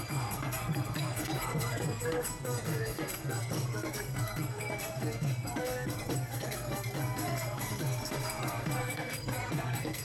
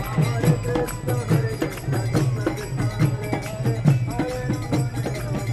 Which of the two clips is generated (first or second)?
first